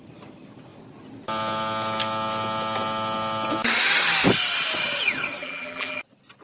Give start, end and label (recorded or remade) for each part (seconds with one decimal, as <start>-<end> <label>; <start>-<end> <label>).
0.0-5.4 recorded; 5.4-6.0 remade; 6.0-6.4 recorded